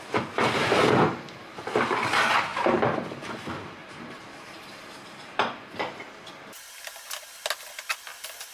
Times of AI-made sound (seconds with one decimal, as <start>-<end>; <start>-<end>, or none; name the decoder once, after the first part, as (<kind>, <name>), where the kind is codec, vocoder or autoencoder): 2.5-3.1 (vocoder, BigVGAN v2); 3.8-5.5